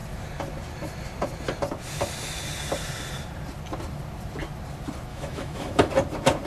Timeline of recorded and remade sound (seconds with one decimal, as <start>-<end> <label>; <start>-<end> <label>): 0.0-5.1 recorded; 5.1-5.9 remade; 5.9-6.5 recorded